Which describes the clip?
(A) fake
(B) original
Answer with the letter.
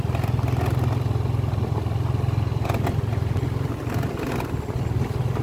B